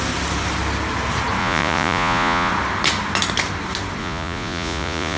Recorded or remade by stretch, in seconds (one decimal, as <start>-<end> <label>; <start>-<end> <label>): 0.0-1.4 recorded; 1.4-2.5 remade; 2.5-4.0 recorded; 4.0-5.2 remade